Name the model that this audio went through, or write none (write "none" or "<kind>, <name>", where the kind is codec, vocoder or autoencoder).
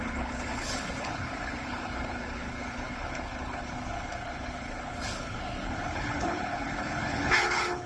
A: codec, HILCodec